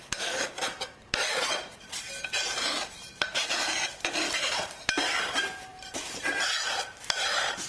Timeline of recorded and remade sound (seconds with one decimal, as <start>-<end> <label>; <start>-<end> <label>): 0.0-7.7 remade